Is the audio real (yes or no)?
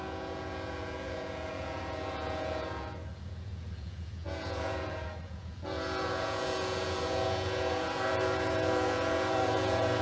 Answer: no